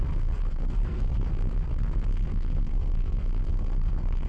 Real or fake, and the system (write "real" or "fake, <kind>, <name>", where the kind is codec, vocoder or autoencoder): fake, codec, SNAC